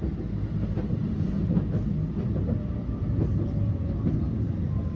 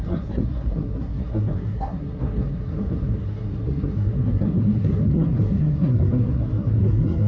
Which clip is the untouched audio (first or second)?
first